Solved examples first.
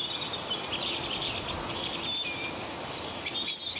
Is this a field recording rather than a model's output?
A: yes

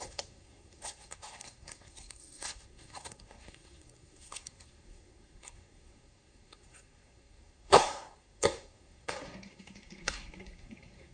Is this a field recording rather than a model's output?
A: no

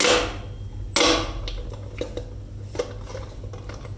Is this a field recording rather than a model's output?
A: yes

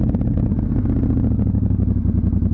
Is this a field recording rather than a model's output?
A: yes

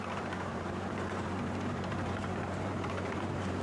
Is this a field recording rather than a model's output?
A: no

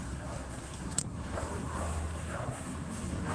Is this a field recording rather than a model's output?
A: no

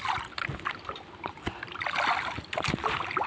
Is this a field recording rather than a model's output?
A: yes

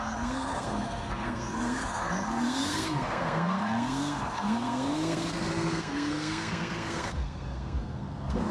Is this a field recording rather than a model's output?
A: no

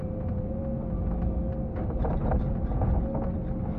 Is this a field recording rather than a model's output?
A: yes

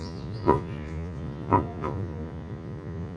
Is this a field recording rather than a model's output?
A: no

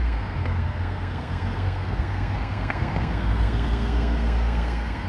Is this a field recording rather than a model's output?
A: no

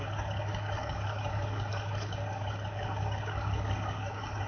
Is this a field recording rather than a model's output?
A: no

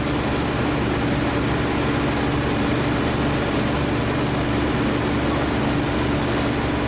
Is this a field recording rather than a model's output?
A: yes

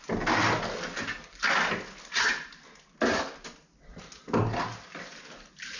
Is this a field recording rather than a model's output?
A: yes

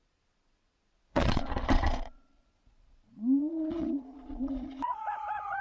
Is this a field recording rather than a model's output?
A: no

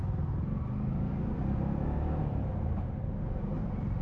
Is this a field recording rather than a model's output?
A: yes